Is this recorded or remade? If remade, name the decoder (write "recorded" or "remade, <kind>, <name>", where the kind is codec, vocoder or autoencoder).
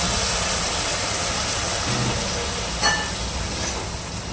recorded